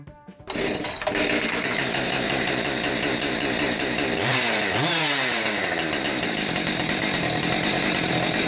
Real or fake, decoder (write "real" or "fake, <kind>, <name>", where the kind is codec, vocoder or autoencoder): fake, vocoder, BigVGAN v2